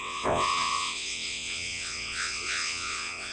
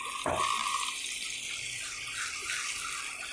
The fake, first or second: first